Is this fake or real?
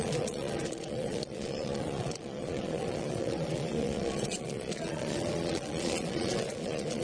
fake